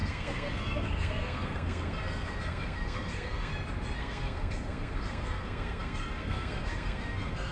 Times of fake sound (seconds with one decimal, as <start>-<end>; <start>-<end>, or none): 0.0-3.5; 4.0-7.5